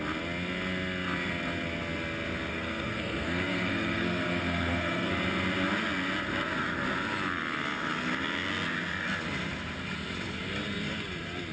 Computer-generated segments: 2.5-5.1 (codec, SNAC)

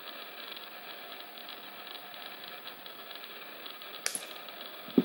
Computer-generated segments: none

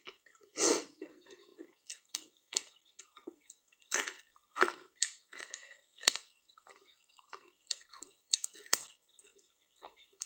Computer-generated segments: 0.0-10.3 (codec, SNAC)

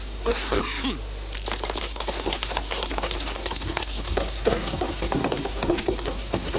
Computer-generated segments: 0.0-0.6 (codec, SNAC); 1.8-6.6

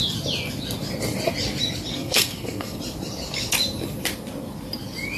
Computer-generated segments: 1.9-2.8 (codec, SNAC)